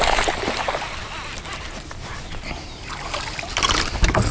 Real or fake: real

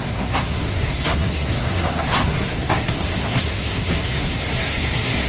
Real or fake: fake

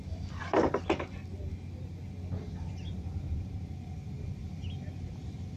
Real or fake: real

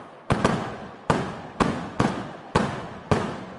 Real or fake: fake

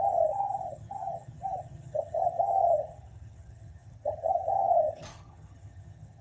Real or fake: fake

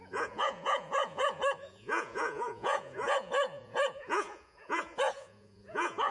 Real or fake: fake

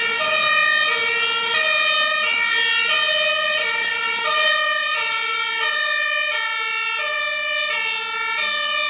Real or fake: real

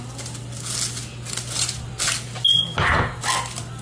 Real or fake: real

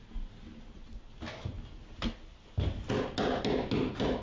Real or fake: real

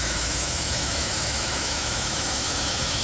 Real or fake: fake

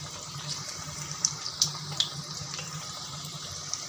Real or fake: fake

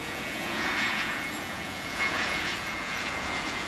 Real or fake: fake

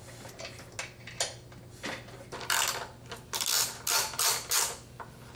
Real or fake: real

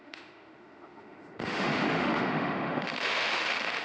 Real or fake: fake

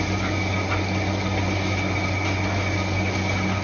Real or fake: real